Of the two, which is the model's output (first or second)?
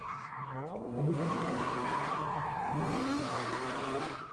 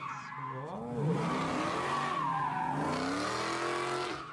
first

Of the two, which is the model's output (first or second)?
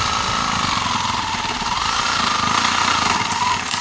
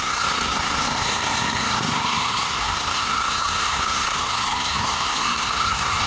second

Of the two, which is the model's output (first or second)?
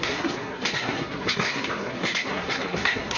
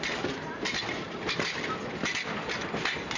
first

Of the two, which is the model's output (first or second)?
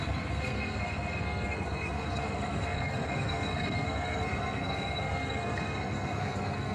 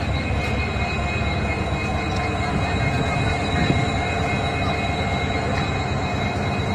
first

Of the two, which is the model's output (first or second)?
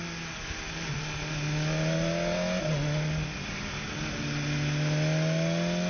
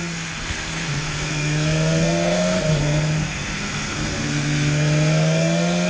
second